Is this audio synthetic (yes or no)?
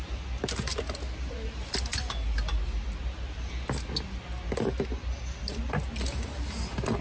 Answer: no